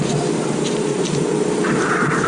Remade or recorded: recorded